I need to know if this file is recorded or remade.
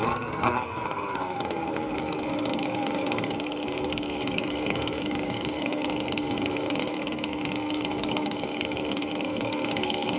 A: remade